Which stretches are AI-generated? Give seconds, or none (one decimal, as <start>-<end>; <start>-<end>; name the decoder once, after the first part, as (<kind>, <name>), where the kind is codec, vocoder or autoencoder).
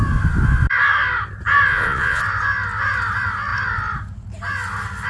1.7-2.2 (vocoder, Vocos)